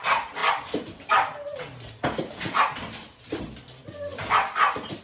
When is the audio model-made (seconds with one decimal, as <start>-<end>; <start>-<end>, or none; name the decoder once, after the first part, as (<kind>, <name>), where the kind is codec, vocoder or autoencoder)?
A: none